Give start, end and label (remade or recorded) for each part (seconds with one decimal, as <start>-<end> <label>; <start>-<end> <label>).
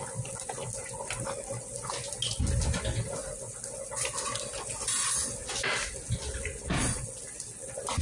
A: 0.0-8.0 recorded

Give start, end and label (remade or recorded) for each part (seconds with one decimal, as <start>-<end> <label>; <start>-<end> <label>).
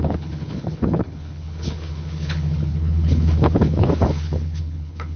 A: 0.0-5.2 remade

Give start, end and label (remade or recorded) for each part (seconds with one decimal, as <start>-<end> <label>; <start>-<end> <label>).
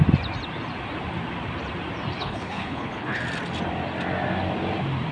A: 0.0-2.2 recorded; 2.2-3.2 remade; 3.2-5.1 recorded